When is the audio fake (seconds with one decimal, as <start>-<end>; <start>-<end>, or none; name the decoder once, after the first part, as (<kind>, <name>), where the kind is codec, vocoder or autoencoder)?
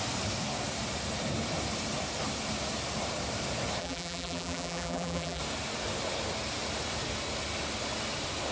3.8-5.4 (vocoder, BigVGAN v2)